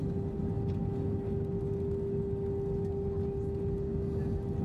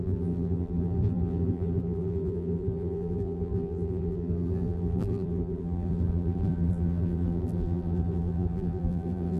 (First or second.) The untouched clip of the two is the first